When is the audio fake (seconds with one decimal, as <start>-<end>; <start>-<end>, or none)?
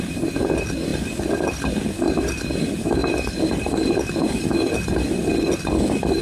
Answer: 0.9-1.7